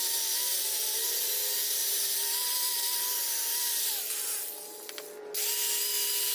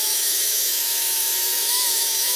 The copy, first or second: second